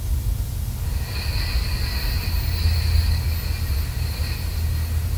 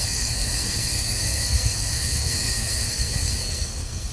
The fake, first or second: second